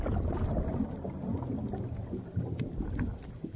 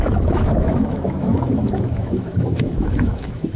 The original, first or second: first